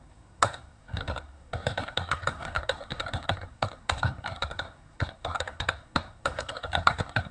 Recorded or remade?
remade